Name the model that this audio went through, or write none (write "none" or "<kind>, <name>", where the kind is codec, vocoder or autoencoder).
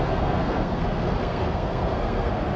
codec, SNAC